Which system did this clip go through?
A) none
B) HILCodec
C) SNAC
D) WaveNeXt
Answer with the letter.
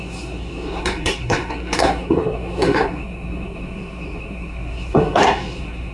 C